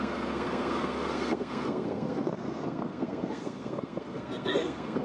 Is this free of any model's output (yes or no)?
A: no